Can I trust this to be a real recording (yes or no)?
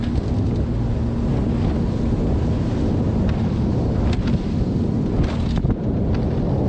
yes